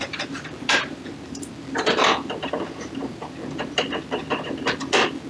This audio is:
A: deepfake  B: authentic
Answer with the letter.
A